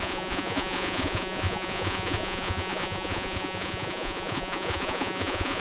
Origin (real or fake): fake